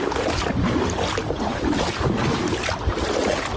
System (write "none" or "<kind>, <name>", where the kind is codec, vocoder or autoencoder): none